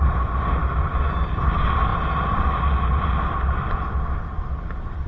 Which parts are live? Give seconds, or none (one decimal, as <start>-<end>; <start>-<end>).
0.0-5.1